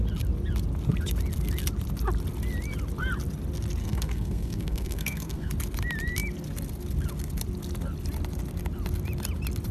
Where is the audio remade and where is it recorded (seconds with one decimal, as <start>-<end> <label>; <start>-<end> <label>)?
0.0-3.8 recorded; 3.8-5.5 remade; 5.5-9.7 recorded